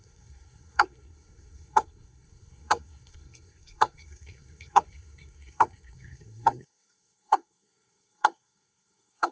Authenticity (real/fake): fake